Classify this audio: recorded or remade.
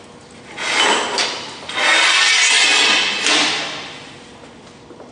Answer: recorded